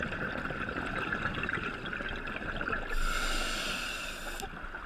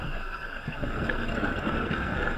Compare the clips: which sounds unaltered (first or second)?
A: first